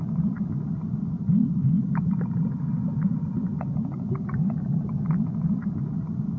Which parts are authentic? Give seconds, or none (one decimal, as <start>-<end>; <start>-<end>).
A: 0.0-1.4; 2.2-6.4